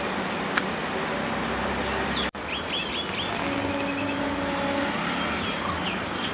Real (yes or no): yes